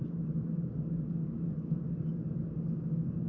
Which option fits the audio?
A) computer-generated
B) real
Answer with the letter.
B